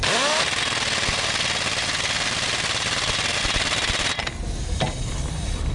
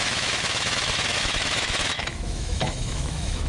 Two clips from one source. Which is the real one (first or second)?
first